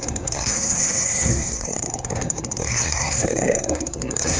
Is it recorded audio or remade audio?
remade